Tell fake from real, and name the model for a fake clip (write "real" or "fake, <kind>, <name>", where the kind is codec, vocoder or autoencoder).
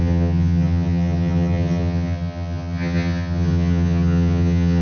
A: fake, vocoder, HiFi-GAN